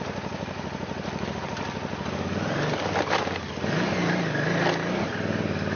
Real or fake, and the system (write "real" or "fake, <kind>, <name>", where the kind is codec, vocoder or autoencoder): real